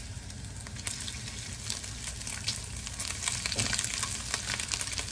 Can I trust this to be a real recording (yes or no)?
yes